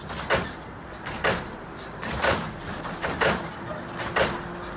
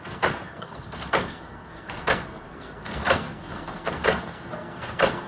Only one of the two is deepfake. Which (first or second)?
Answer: second